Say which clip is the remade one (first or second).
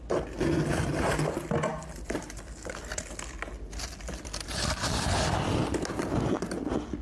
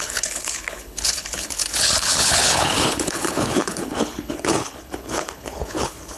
second